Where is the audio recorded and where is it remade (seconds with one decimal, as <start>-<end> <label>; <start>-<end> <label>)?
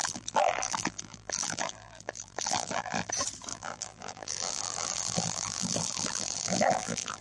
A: 0.0-3.1 remade; 3.1-3.5 recorded; 3.5-7.2 remade